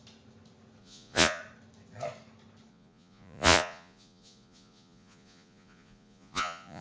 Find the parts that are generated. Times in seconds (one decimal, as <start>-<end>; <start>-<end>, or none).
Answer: 0.8-1.4; 2.7-6.8